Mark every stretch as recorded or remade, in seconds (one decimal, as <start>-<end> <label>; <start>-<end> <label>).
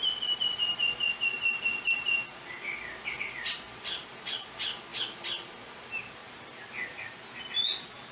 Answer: 0.0-8.1 recorded